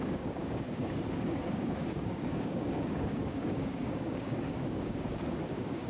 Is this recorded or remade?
remade